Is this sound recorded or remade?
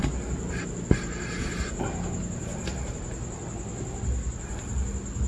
recorded